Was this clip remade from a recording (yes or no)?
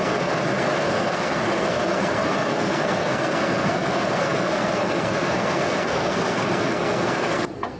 yes